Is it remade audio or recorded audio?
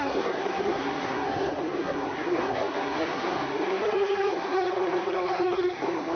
remade